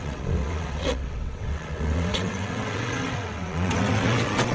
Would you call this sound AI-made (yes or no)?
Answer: yes